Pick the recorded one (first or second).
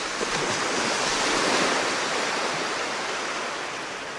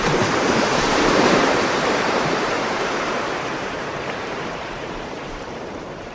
first